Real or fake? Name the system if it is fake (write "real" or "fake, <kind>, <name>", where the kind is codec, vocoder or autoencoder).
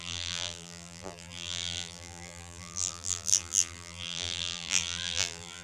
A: fake, vocoder, BigVGAN v2